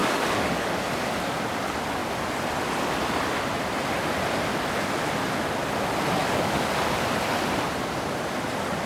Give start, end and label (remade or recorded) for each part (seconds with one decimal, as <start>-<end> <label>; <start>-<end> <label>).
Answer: 0.0-0.7 remade; 0.7-6.2 recorded; 6.2-6.7 remade; 6.7-8.9 recorded